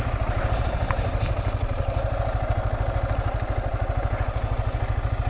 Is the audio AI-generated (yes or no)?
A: no